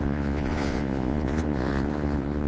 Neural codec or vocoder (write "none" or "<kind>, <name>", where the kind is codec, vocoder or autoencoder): vocoder, Vocos